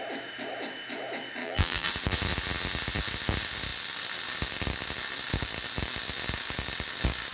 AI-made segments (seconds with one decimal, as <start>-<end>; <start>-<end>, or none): 1.4-1.9